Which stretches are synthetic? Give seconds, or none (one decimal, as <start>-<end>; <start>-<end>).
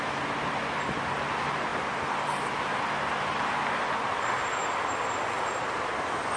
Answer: none